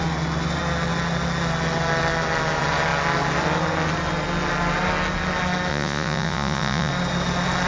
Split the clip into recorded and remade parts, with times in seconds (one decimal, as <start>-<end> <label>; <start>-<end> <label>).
0.0-5.7 recorded; 5.7-6.9 remade; 6.9-7.7 recorded